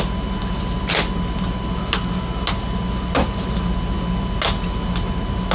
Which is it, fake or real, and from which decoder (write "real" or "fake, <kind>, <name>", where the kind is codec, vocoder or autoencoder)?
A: real